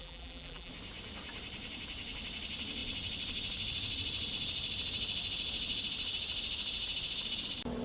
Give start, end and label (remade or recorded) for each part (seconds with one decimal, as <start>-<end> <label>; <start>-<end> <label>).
0.0-0.7 remade; 0.7-7.8 recorded